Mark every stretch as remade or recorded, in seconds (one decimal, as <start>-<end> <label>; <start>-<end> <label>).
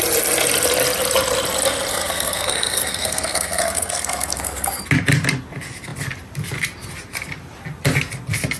0.0-1.9 recorded; 1.9-4.8 remade; 4.8-8.6 recorded